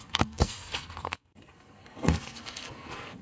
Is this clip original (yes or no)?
no